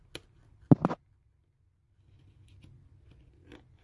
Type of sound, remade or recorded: recorded